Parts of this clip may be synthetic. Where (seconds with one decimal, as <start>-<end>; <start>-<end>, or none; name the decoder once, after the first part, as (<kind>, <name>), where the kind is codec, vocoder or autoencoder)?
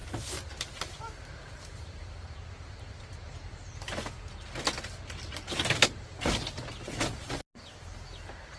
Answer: none